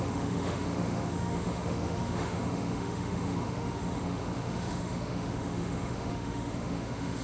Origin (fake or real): fake